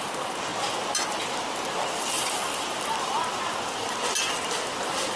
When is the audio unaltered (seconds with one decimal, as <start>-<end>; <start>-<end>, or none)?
0.0-5.2